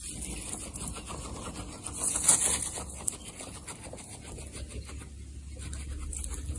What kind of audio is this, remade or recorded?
recorded